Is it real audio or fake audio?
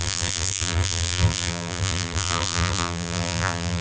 fake